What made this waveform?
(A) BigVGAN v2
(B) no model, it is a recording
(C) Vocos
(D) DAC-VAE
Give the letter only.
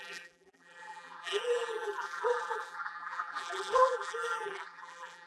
A